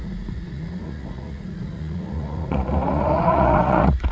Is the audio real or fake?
fake